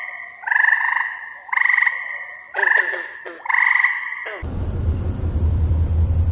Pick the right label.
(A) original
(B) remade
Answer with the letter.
B